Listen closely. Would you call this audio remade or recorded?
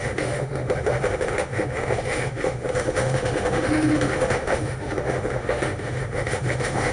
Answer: remade